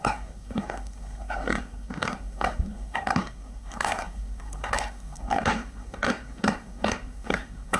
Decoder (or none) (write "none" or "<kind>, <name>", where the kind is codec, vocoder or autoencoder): codec, SNAC